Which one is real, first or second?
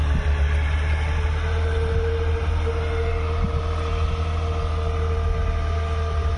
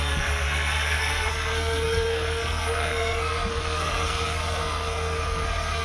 first